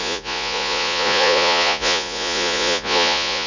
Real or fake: fake